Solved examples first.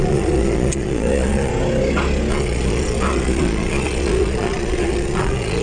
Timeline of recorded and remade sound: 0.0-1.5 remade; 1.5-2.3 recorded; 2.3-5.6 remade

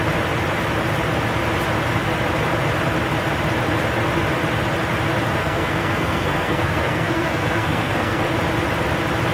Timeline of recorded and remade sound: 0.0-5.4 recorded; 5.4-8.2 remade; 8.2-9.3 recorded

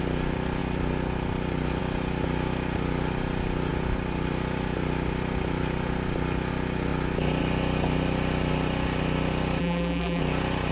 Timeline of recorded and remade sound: 0.0-9.6 recorded; 9.6-10.2 remade; 10.2-10.7 recorded

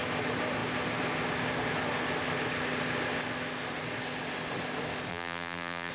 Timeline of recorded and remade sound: 0.0-5.1 recorded; 5.1-5.9 remade

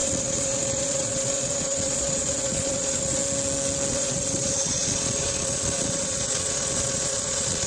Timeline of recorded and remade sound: 0.0-3.2 remade; 3.2-3.9 recorded; 3.9-7.7 remade